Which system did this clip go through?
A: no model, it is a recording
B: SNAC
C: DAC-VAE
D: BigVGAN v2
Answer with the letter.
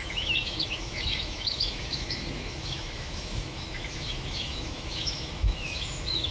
C